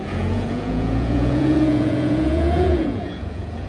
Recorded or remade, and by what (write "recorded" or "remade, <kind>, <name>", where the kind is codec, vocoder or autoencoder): remade, vocoder, Vocos